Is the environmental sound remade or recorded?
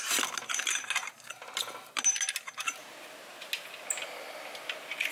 recorded